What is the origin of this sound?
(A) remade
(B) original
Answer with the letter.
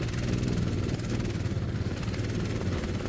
B